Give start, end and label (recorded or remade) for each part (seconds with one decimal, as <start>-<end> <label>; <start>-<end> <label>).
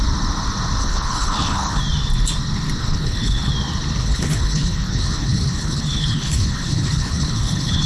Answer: 0.0-0.8 recorded; 0.8-1.8 remade; 1.8-2.8 recorded; 2.8-3.5 remade; 3.5-4.0 recorded; 4.0-7.9 remade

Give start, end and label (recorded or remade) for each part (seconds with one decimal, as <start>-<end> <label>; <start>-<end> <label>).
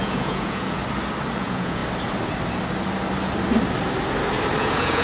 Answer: 0.0-0.8 remade; 0.8-1.4 recorded; 1.4-1.8 remade; 1.8-4.6 recorded; 4.6-5.0 remade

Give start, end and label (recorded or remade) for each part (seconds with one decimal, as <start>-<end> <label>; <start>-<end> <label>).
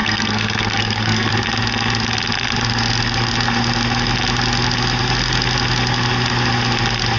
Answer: 0.0-1.3 remade; 1.3-7.2 recorded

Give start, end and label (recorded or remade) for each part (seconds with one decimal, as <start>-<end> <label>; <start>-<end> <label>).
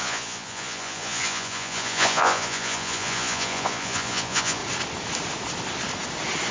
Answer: 0.0-4.6 remade; 4.6-6.5 recorded